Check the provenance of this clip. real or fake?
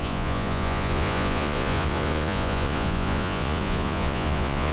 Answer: fake